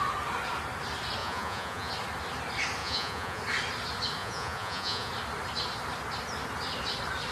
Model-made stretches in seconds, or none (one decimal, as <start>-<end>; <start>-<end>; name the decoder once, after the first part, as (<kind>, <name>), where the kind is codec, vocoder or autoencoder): 1.2-1.9 (vocoder, Vocos); 2.8-3.4; 4.2-5.1